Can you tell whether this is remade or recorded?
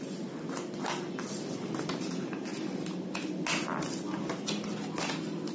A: recorded